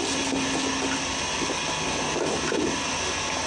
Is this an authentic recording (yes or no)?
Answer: yes